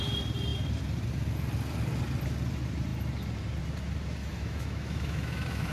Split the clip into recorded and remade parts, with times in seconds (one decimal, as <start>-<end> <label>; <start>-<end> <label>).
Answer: 0.0-4.2 recorded; 4.2-5.7 remade